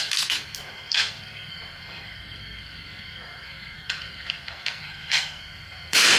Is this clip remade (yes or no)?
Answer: yes